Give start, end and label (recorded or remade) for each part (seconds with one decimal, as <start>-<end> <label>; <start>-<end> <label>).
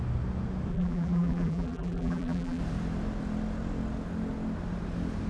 0.0-0.7 recorded; 0.7-2.6 remade; 2.6-5.3 recorded